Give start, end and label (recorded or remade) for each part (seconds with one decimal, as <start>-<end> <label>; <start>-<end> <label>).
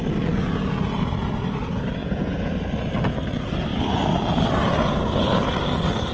0.0-2.0 recorded; 2.0-2.5 remade; 2.5-6.1 recorded